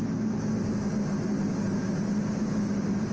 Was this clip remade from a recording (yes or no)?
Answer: no